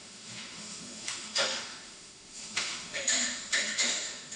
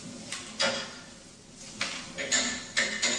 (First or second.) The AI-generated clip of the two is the first